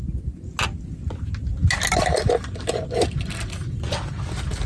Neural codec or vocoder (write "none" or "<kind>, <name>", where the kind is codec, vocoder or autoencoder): none